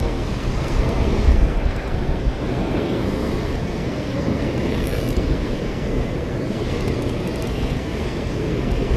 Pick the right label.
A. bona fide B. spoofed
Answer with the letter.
B